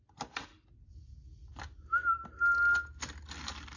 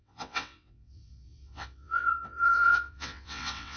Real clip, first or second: first